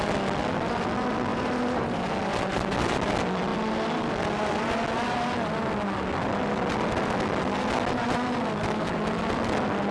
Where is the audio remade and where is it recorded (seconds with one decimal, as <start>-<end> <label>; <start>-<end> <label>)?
0.0-1.3 recorded; 1.3-2.0 remade; 2.0-9.9 recorded